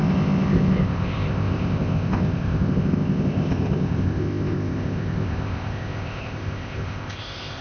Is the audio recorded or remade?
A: remade